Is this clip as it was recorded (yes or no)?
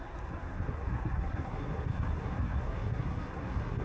no